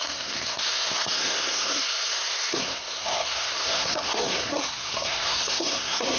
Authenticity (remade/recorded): remade